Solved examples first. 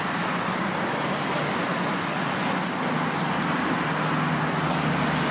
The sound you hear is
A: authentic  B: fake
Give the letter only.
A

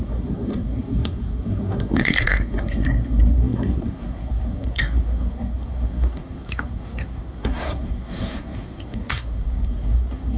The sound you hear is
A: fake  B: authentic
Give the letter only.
A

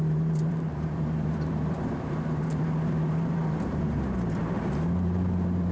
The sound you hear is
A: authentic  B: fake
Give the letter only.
B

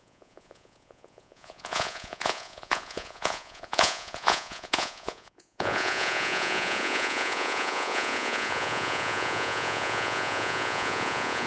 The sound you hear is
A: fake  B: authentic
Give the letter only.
A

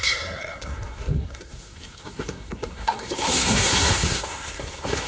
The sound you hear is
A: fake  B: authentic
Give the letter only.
A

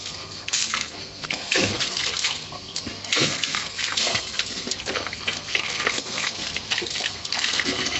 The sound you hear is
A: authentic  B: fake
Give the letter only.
B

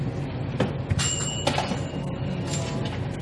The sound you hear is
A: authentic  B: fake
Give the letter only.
A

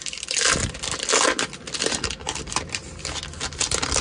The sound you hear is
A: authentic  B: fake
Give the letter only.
A